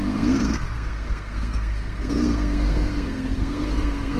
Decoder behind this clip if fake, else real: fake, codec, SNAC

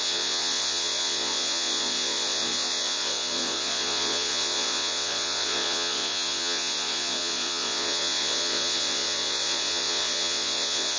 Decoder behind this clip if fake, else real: fake, vocoder, Vocos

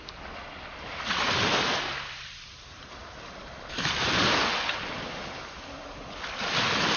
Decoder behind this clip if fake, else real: real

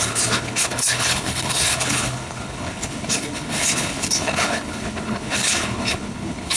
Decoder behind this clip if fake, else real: fake, codec, HILCodec